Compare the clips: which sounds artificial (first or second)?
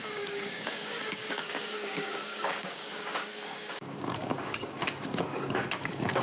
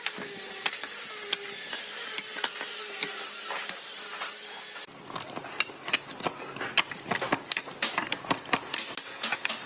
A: first